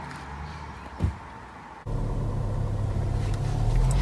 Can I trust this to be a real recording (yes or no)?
yes